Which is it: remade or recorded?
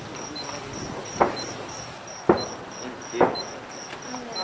recorded